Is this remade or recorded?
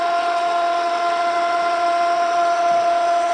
remade